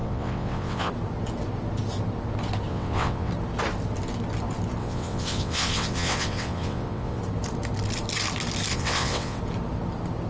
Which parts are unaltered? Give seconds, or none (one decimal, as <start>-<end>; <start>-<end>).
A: 0.9-2.7; 3.3-4.8; 7.2-8.7; 9.4-10.3